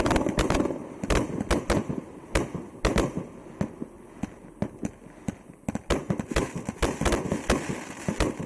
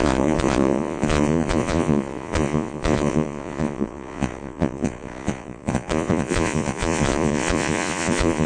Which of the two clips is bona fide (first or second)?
first